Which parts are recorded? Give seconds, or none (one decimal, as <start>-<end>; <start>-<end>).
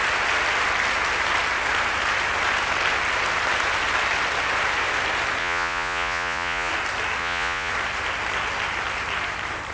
0.0-5.4; 6.7-7.2; 7.7-9.7